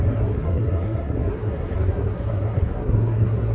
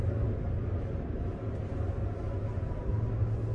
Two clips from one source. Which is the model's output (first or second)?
first